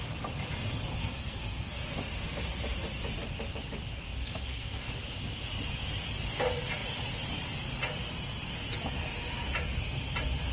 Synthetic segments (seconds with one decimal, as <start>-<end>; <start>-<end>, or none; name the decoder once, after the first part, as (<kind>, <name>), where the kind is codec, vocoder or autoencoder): 1.0-1.9 (codec, SNAC); 4.2-4.9